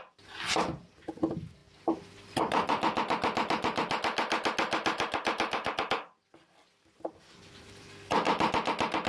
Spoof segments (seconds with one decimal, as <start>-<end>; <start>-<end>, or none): none